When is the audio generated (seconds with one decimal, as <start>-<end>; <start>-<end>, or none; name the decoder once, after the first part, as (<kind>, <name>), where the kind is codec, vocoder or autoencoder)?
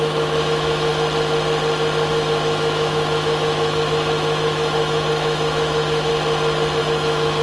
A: 0.0-0.9 (autoencoder, DAC-VAE); 2.1-6.1; 6.8-7.4